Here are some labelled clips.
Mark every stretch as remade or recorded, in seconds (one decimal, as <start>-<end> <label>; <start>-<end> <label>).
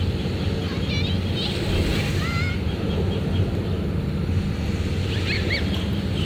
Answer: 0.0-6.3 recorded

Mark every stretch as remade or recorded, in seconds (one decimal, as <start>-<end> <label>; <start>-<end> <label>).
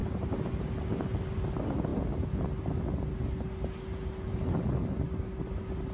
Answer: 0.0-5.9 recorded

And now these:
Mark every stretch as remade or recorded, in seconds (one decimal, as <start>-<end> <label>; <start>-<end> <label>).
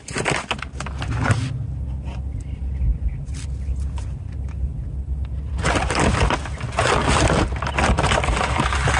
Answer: 0.0-9.0 recorded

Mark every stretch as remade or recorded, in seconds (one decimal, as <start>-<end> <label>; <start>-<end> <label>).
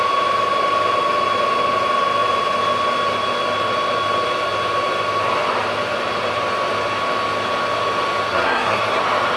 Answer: 0.0-8.3 recorded; 8.3-9.0 remade; 9.0-9.4 recorded